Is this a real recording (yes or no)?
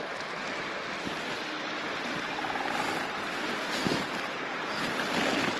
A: yes